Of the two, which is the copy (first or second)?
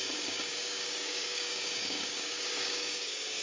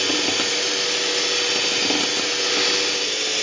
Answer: first